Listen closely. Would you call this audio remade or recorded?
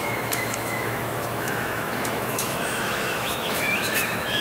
remade